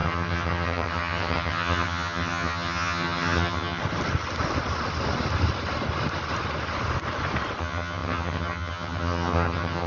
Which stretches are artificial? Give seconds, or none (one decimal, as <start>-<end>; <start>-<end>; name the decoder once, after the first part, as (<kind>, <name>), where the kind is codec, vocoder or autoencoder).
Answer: 0.0-3.8 (vocoder, HiFi-GAN); 7.6-9.9